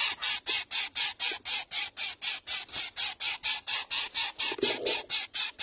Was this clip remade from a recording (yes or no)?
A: no